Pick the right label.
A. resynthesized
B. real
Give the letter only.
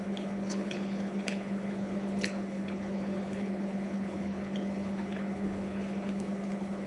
A